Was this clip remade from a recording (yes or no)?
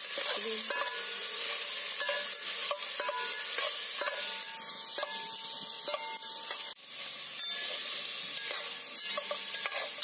no